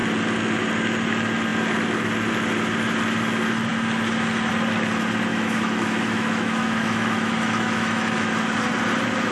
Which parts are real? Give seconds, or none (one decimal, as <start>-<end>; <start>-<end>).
0.0-5.3; 8.3-9.3